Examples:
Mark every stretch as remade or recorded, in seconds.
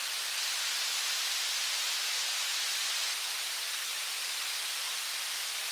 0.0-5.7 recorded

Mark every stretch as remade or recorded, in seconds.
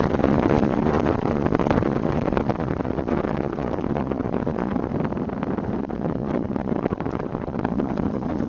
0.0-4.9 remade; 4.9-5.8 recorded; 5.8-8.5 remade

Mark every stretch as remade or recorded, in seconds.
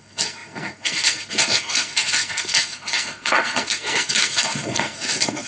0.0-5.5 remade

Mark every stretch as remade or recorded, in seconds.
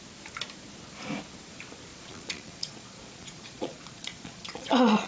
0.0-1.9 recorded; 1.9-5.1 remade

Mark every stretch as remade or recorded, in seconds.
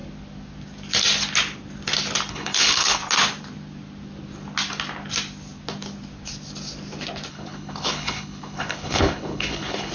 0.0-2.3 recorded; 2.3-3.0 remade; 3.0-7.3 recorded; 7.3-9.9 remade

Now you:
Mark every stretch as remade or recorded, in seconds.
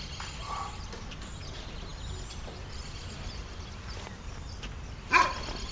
0.0-5.7 recorded